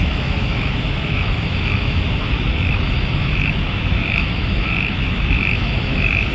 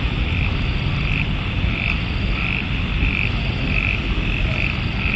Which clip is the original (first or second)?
second